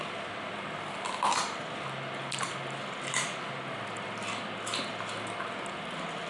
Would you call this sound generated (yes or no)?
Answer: no